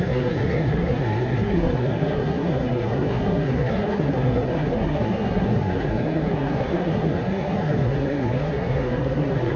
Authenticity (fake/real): fake